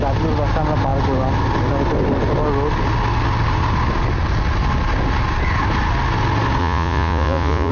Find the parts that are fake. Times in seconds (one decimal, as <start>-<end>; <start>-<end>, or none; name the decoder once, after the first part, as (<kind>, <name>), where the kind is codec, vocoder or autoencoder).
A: 6.6-7.7 (vocoder, Vocos)